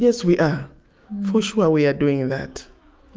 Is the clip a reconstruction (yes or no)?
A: yes